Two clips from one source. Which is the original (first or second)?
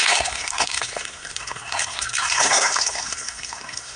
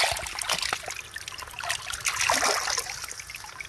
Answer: second